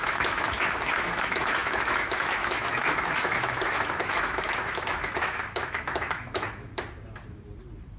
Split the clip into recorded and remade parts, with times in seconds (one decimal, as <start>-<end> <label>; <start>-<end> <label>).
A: 0.0-6.7 remade; 6.7-8.0 recorded